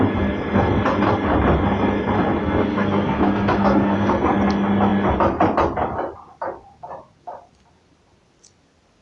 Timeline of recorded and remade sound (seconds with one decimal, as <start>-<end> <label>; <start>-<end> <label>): 0.0-2.4 recorded; 2.4-4.1 remade; 4.1-9.0 recorded